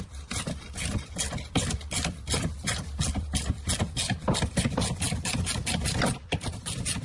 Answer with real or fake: real